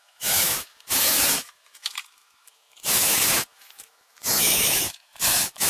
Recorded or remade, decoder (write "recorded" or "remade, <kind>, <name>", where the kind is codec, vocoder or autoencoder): remade, autoencoder, DAC-VAE